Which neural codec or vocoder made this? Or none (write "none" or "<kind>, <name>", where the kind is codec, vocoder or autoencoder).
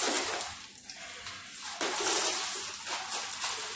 none